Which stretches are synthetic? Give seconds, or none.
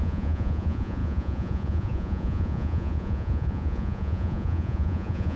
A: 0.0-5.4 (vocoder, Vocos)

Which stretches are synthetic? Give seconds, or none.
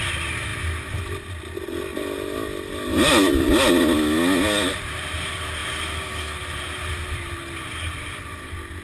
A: none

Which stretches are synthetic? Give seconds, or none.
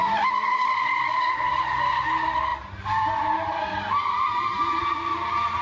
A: none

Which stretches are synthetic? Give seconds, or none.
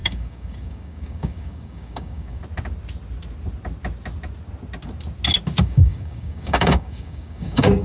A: 0.0-2.4 (codec, DAC); 5.6-7.8